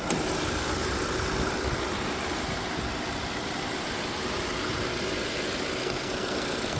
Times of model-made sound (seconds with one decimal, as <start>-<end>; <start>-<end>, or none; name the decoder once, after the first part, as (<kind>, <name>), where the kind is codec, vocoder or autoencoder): 5.8-6.8 (codec, SNAC)